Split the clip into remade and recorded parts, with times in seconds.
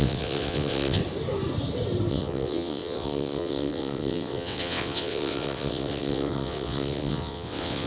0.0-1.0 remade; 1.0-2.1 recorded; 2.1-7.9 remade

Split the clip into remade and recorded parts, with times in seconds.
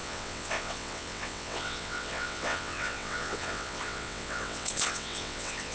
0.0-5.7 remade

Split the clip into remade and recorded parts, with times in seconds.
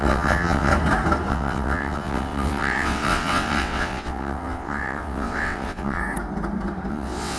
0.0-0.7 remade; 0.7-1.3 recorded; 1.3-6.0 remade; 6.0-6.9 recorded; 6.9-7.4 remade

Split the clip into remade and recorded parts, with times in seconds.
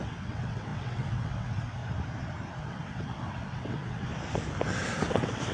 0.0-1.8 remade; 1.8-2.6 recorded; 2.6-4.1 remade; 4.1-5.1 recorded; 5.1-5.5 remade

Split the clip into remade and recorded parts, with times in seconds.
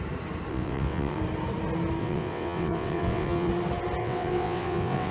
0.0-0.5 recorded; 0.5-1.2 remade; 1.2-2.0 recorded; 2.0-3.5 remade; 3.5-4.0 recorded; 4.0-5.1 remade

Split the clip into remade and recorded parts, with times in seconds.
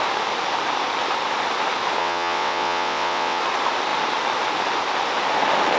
0.0-2.0 recorded; 2.0-3.4 remade; 3.4-5.8 recorded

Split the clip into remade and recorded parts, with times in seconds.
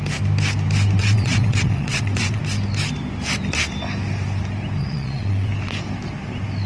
0.0-1.0 recorded; 1.0-2.4 remade; 2.4-4.8 recorded; 4.8-5.5 remade; 5.5-6.7 recorded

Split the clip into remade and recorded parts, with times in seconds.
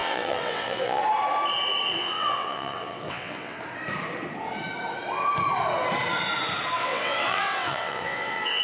0.0-1.0 remade; 1.0-2.0 recorded; 2.0-3.6 remade; 3.6-6.8 recorded; 6.8-8.6 remade